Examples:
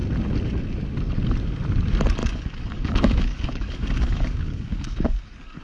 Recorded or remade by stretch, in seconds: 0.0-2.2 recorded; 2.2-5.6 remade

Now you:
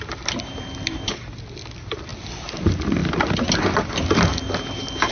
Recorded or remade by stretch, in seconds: 0.0-5.1 recorded

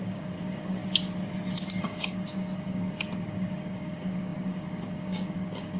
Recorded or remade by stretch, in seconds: 0.0-0.8 remade; 0.8-1.8 recorded; 1.8-5.8 remade